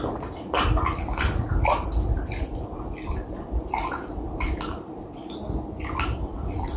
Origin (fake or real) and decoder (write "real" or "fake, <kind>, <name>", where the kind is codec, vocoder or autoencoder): real